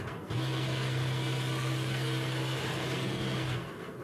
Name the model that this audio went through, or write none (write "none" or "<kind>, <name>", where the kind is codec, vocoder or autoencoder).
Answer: codec, SNAC